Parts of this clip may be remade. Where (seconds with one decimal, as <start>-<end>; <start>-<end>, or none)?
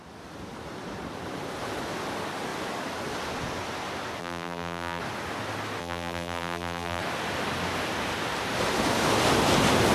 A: 4.2-5.0; 5.8-7.0